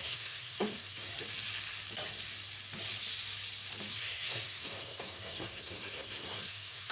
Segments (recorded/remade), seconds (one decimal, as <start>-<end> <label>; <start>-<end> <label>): 0.0-1.1 remade; 1.1-3.9 recorded; 3.9-6.9 remade